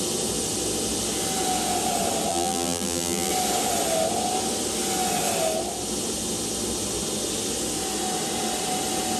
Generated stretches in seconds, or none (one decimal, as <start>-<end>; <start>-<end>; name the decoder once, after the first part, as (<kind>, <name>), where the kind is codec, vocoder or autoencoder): 2.3-3.3 (vocoder, BigVGAN v2)